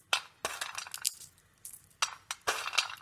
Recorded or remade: recorded